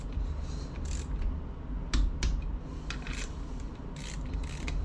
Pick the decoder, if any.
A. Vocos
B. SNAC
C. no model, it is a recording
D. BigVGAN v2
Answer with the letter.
C